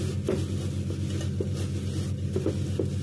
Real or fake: real